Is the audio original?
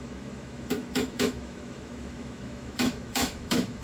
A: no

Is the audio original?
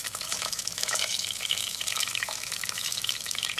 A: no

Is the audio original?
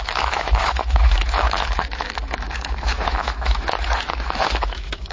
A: no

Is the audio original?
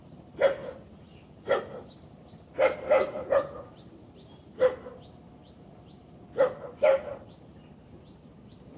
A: yes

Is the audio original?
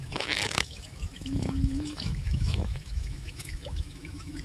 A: no